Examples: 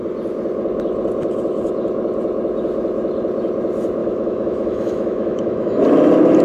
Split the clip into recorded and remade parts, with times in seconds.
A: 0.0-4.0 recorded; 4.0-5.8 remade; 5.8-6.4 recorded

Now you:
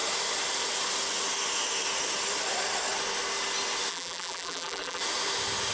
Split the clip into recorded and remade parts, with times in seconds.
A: 0.0-3.9 recorded; 3.9-5.0 remade; 5.0-5.7 recorded

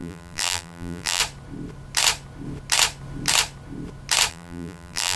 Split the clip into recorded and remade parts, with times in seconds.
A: 0.0-1.2 remade; 1.2-4.3 recorded; 4.3-5.2 remade

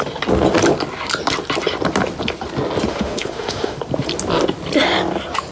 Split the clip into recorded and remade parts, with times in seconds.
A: 0.0-2.9 recorded; 2.9-3.8 remade; 3.8-5.5 recorded

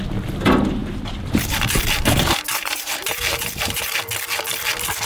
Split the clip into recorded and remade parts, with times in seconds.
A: 0.0-0.8 recorded; 0.8-3.9 remade; 3.9-5.1 recorded

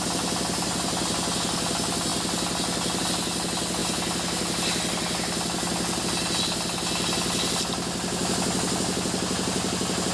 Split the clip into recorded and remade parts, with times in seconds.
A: 0.0-10.1 recorded